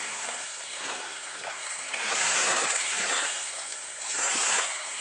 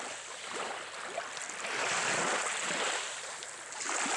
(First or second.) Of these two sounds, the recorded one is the second